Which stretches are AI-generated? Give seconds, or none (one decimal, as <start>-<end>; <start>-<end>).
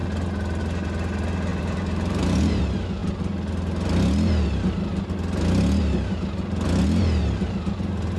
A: 1.5-2.6